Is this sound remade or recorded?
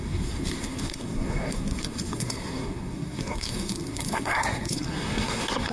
remade